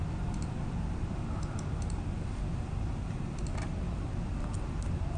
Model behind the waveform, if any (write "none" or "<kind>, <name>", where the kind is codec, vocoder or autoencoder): vocoder, BigVGAN v2